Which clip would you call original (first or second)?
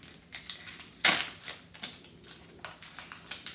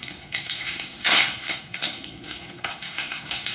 first